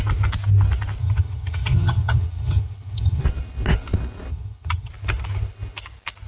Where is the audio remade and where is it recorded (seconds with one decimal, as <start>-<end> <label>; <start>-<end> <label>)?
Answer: 0.0-1.0 recorded; 1.0-3.2 remade; 3.2-4.3 recorded; 4.3-4.9 remade; 4.9-6.3 recorded